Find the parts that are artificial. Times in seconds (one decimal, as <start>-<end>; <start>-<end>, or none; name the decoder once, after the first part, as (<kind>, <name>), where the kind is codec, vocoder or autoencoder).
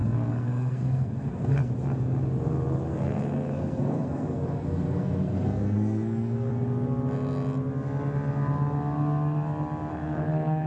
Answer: 0.0-1.7 (codec, SNAC); 2.9-6.5; 9.9-10.7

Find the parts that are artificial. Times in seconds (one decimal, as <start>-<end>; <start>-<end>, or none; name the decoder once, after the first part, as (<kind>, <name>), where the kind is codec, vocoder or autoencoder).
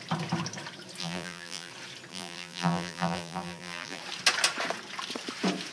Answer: 1.0-1.7 (vocoder, BigVGAN v2); 2.1-4.0